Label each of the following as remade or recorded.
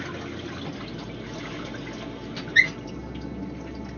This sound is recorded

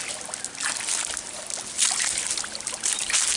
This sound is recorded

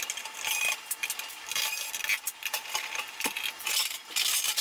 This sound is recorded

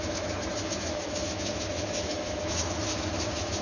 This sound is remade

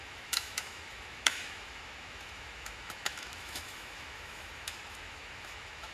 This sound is remade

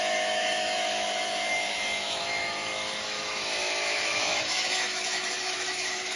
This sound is remade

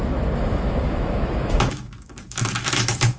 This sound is remade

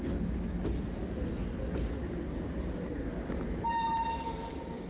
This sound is recorded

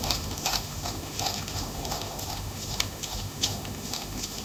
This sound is remade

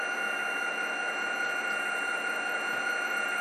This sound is recorded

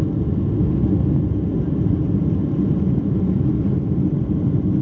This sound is recorded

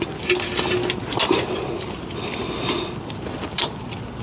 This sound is recorded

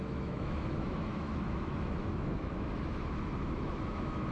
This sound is remade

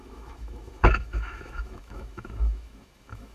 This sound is remade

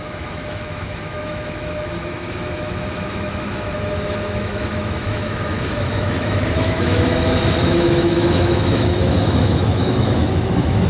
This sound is remade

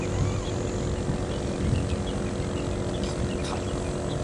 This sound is recorded